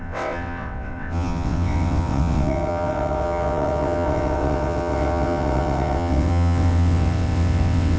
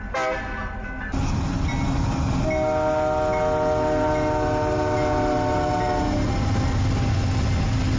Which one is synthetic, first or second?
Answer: first